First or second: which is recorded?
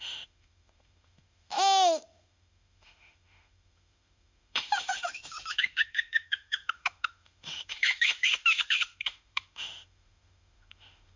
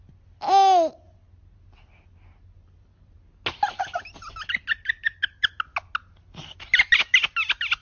second